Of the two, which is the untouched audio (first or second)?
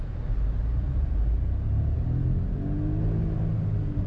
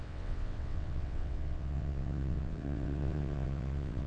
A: first